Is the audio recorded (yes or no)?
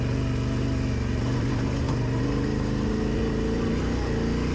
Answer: yes